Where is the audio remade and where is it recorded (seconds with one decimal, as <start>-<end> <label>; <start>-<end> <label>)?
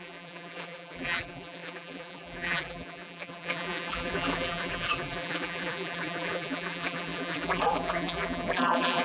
0.0-9.0 remade